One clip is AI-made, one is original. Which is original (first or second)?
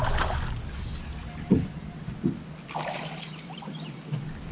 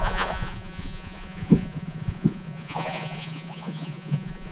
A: first